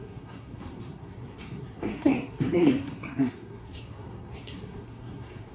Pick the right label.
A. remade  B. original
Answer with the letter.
A